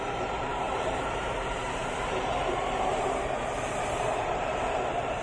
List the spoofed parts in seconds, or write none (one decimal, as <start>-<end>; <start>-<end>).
0.0-5.2